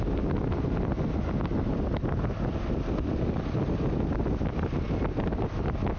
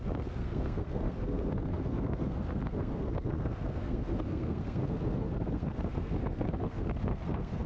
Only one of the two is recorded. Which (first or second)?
first